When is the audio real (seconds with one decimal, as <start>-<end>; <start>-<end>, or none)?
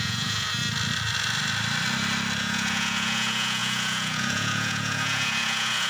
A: 0.6-2.4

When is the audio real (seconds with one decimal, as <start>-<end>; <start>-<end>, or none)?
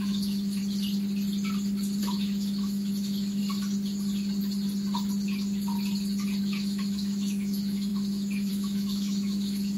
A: 0.6-2.0; 3.4-6.4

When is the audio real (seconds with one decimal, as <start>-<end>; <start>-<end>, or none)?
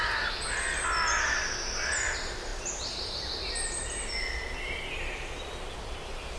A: 0.0-6.4